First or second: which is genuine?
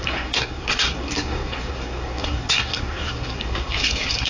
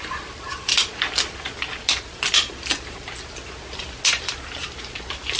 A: second